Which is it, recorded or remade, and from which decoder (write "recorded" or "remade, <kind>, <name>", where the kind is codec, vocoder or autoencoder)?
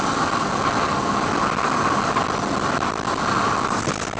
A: recorded